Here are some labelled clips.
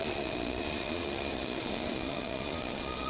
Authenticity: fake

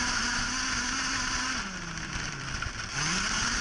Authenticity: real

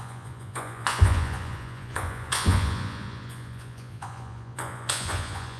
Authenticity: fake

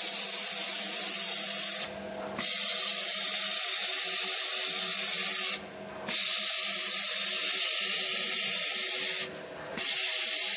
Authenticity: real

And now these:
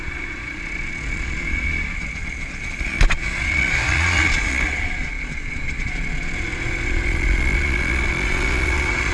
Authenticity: fake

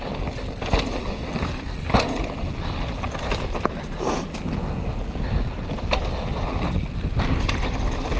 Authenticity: real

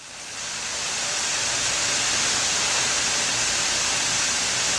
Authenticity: real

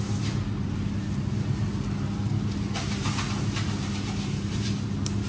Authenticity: real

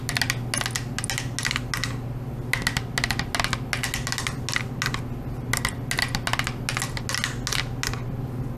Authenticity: real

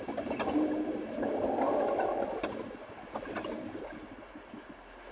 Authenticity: real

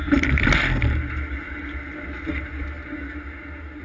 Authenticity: real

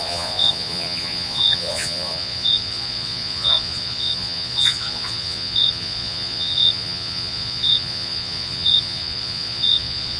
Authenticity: fake